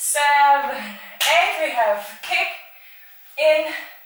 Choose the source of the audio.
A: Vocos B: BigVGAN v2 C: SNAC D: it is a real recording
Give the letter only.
D